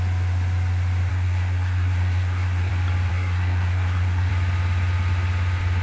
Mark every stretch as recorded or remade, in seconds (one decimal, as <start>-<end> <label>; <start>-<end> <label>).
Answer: 0.0-1.1 recorded; 1.1-2.7 remade; 2.7-3.1 recorded; 3.1-4.3 remade; 4.3-5.8 recorded